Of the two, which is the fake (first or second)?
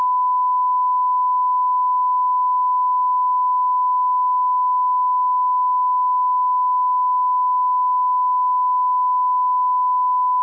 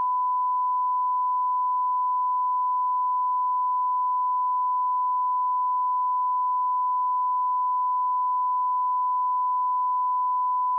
first